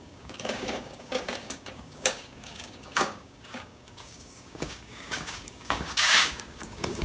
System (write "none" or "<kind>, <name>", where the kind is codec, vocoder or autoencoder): codec, DAC